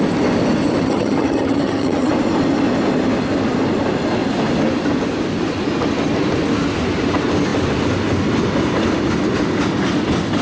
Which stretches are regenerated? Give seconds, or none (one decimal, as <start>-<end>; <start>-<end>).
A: 0.8-2.1